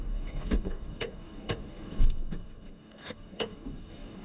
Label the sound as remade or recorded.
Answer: remade